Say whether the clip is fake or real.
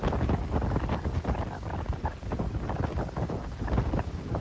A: real